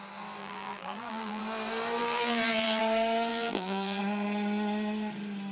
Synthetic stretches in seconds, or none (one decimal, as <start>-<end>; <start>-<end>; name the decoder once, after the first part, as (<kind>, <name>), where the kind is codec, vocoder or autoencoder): 0.4-1.4 (vocoder, BigVGAN v2); 2.0-2.8; 3.3-4.0